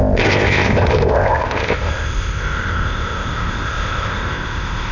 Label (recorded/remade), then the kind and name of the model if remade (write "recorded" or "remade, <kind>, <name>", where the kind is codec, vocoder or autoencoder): remade, codec, ZipCodec